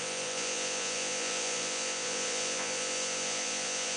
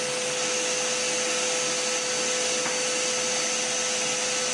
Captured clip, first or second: second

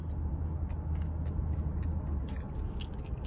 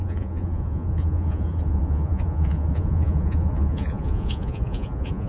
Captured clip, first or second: first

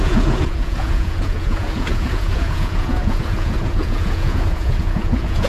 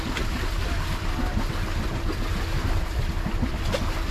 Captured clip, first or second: second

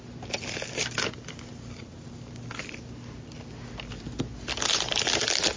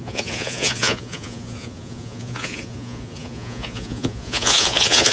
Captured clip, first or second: first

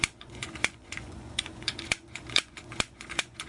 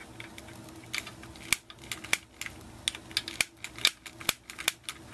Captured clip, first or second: second